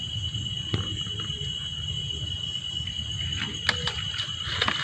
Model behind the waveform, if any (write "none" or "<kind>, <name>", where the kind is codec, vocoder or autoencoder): none